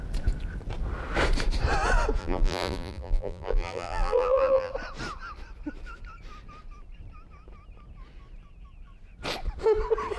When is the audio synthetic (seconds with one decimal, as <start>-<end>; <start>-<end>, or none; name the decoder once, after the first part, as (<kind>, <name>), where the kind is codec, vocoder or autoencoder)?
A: 2.2-4.7 (vocoder, BigVGAN v2)